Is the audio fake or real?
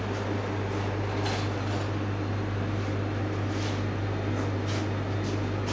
real